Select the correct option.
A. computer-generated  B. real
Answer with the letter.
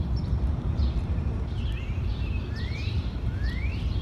A